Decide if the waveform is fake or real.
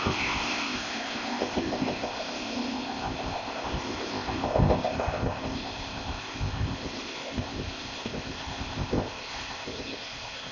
fake